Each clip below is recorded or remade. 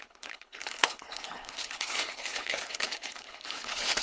remade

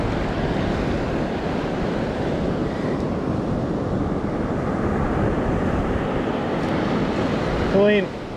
recorded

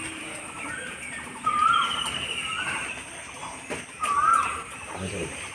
recorded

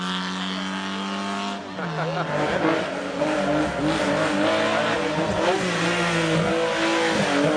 recorded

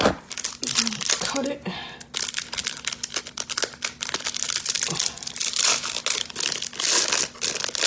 recorded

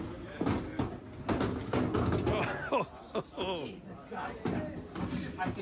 recorded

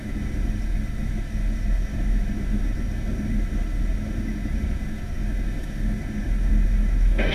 remade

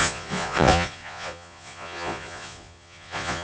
remade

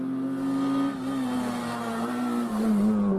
recorded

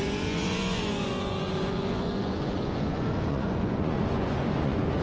remade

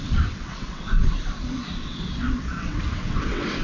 remade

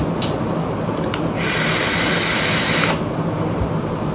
recorded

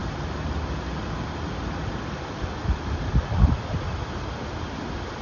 recorded